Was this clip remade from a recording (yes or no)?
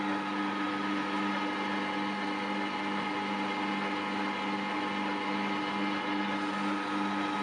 no